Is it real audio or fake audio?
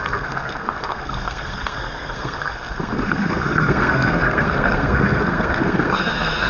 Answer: fake